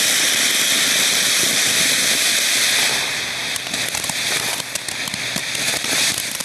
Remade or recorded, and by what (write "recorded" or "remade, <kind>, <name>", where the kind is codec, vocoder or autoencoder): remade, vocoder, BigVGAN v2